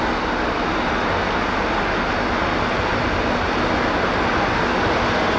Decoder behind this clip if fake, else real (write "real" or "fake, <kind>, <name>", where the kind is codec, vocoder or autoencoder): real